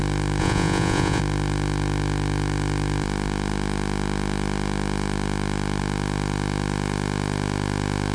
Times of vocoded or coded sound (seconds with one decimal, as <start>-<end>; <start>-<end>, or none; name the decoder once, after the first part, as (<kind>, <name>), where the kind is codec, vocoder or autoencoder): 0.4-1.2 (vocoder, Vocos)